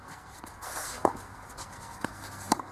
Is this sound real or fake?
fake